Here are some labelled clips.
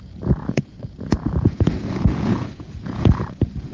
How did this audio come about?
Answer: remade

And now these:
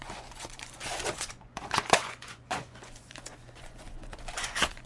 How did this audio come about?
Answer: remade